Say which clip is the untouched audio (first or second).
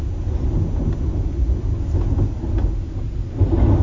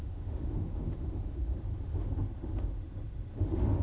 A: first